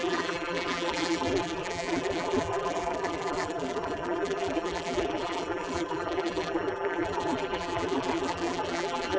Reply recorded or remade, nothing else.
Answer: remade